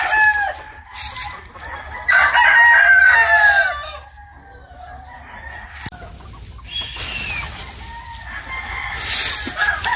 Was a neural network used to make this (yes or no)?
no